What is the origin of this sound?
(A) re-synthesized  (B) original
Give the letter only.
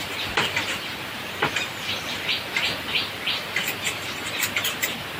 A